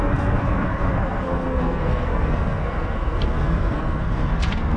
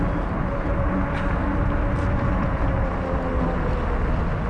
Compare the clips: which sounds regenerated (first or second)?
first